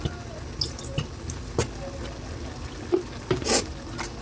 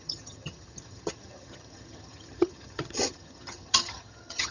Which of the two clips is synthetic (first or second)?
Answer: second